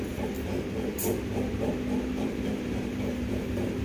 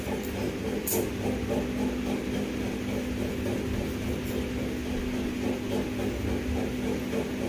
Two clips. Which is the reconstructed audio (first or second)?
first